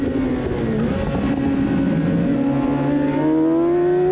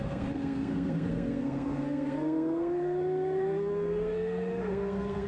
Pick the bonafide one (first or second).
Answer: first